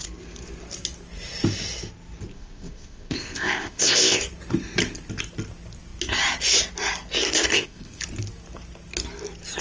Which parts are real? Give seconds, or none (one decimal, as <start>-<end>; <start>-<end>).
0.0-2.3; 4.2-7.5; 8.0-9.6